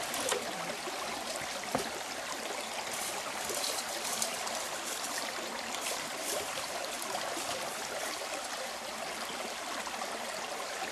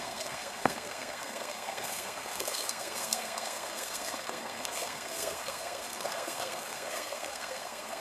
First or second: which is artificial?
second